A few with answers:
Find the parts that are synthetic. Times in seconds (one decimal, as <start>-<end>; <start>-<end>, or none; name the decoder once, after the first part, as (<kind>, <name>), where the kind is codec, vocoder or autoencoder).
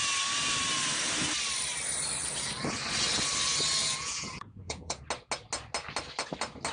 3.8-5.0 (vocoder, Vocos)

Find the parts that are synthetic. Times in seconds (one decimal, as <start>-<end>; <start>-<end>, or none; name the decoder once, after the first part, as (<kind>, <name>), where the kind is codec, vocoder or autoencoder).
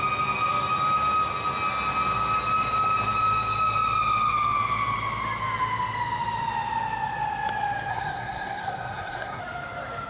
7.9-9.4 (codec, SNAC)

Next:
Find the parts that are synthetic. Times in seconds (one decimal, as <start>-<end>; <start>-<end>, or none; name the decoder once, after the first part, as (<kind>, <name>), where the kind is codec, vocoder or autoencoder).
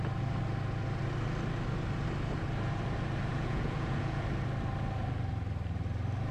3.3-4.2 (vocoder, Vocos)